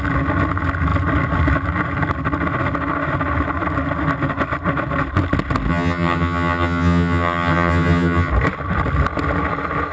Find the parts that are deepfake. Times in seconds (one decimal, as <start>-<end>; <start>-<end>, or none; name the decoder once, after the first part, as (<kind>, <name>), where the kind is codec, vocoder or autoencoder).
5.7-8.3 (vocoder, HiFi-GAN)